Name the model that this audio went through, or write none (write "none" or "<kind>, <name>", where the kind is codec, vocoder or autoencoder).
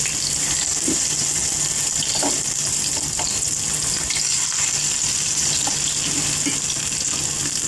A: none